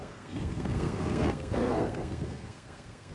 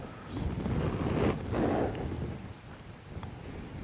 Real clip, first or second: second